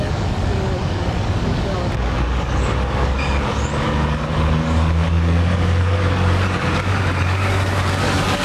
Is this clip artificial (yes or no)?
yes